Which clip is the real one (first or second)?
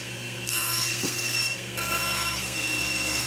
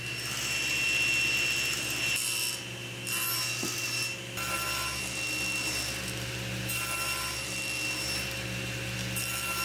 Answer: second